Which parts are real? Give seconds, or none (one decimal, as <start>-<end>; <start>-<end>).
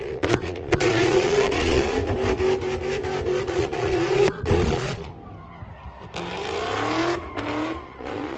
2.0-3.4; 5.1-7.8